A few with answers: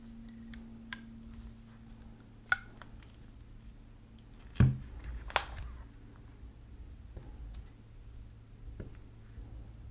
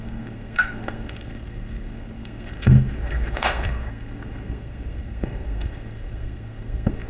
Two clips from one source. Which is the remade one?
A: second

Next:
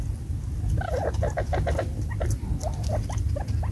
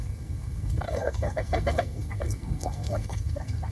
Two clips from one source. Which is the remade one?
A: second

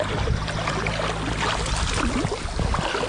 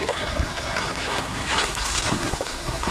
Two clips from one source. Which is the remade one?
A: second